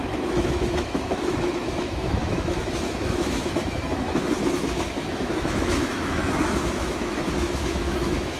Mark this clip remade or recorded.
remade